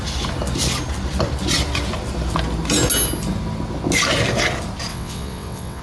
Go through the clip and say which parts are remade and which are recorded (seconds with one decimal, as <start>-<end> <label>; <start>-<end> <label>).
0.0-4.9 recorded; 4.9-5.8 remade